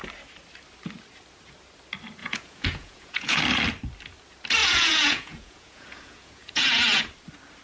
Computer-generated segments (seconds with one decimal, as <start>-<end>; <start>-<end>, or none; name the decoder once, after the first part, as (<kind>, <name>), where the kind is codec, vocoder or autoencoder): 2.2-3.4 (vocoder, Vocos); 4.6-7.0